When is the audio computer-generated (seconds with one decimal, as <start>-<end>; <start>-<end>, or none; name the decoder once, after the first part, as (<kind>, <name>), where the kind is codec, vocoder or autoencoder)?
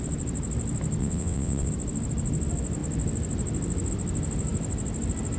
1.0-1.7 (vocoder, WaveNeXt)